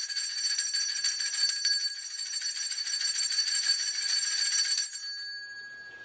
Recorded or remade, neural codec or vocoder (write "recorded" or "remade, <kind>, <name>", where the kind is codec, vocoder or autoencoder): recorded